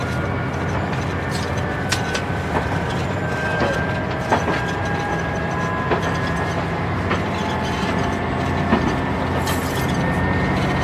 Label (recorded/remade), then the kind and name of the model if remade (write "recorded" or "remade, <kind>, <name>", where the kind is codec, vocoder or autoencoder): recorded